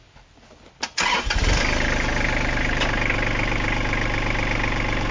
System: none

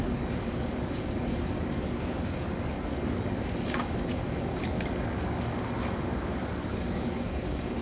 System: codec, DAC